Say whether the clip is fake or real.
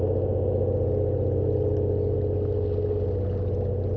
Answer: real